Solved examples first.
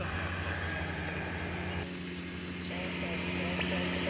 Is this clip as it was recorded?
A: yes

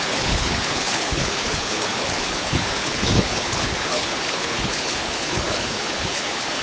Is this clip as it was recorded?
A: no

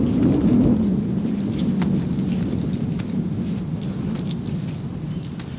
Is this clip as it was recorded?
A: yes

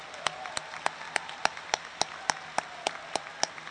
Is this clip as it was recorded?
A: yes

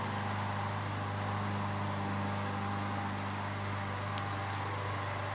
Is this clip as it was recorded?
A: yes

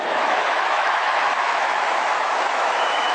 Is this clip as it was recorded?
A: no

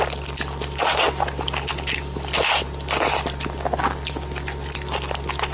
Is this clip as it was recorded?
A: yes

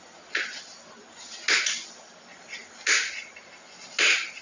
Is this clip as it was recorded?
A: yes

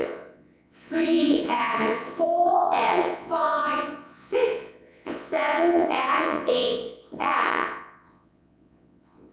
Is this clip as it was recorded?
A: no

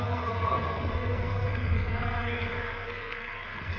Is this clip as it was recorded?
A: no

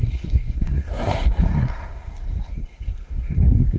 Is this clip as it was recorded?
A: no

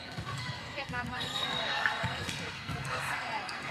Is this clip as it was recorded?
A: no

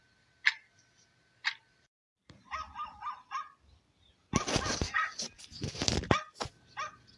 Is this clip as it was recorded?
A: yes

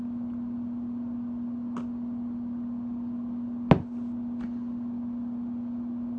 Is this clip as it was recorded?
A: yes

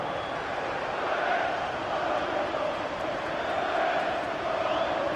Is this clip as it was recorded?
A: yes